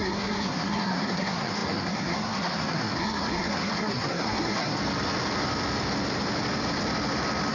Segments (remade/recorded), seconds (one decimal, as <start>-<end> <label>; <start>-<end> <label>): 0.0-4.8 remade; 4.8-7.5 recorded